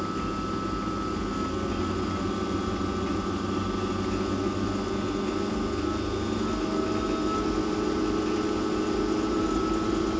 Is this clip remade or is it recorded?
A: recorded